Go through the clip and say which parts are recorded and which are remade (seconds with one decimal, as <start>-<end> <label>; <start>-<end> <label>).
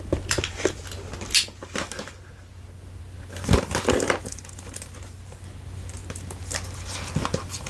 0.0-7.7 recorded